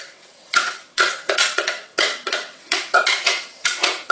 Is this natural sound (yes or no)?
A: no